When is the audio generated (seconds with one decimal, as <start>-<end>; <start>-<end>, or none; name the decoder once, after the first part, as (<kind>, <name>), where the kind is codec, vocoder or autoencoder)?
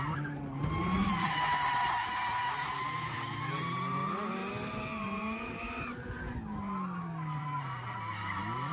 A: 7.4-8.7 (vocoder, BigVGAN v2)